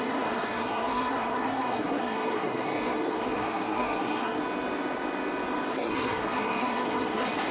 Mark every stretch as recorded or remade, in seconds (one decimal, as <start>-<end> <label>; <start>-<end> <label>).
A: 0.0-4.4 remade; 4.4-5.7 recorded; 5.7-7.5 remade